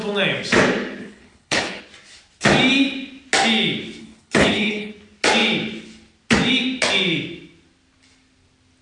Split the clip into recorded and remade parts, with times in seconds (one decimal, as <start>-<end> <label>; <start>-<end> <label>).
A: 0.0-1.0 recorded; 1.0-1.8 remade; 1.8-4.0 recorded; 4.0-4.9 remade; 4.9-8.8 recorded